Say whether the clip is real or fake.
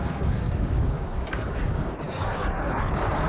fake